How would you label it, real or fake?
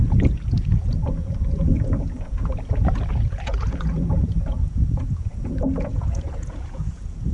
fake